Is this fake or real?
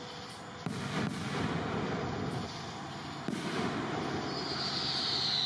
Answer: real